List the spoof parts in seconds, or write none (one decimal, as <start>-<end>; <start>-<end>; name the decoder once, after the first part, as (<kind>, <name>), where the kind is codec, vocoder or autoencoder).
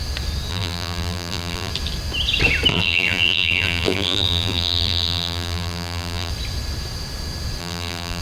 0.5-1.7 (vocoder, BigVGAN v2); 2.7-6.3; 7.6-8.2